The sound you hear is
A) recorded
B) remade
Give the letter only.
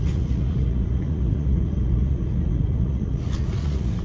B